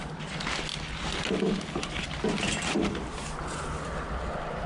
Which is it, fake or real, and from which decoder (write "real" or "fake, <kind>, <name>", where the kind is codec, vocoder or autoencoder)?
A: real